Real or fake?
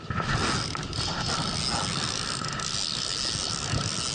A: real